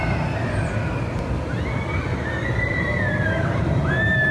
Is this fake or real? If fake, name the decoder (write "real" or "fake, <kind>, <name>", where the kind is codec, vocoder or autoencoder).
real